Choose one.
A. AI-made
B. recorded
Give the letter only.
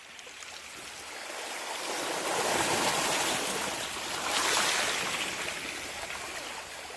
B